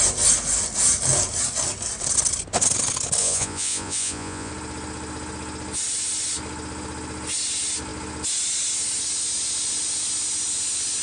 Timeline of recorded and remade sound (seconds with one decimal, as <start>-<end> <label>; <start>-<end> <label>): 0.0-3.2 recorded; 3.2-4.5 remade; 4.5-11.0 recorded